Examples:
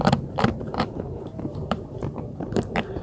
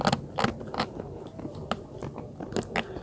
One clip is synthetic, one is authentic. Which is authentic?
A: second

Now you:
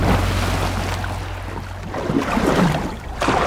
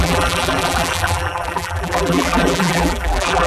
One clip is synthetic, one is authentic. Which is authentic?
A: first